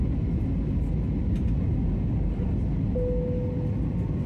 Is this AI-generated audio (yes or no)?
no